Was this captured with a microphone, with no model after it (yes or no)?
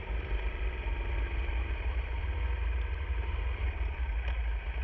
yes